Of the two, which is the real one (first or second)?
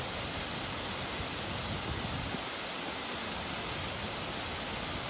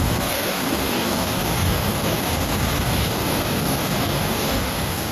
first